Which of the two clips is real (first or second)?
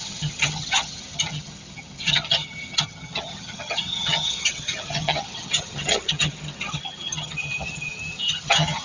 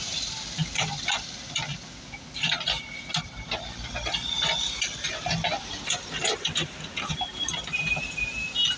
second